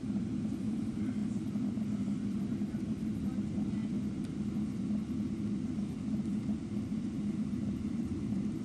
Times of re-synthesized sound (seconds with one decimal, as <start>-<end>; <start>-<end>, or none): 0.0-1.2; 2.3-3.8; 6.4-8.6